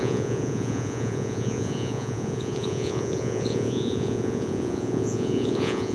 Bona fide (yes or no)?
no